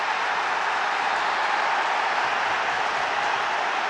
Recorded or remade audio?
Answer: recorded